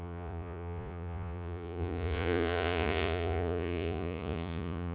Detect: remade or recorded remade